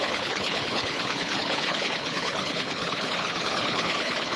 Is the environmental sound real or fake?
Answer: fake